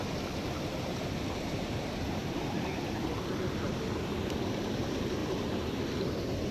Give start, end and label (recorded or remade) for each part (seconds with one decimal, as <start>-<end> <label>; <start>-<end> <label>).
0.0-0.4 recorded; 0.4-3.8 remade; 3.8-5.2 recorded; 5.2-5.8 remade; 5.8-6.5 recorded